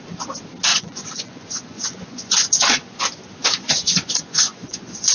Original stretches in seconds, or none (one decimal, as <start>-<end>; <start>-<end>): 0.0-0.7; 3.0-3.4